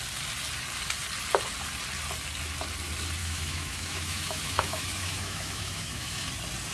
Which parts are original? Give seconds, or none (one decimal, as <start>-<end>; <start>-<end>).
0.0-3.2; 6.3-6.7